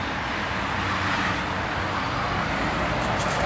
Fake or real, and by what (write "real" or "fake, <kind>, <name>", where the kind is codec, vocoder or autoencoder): real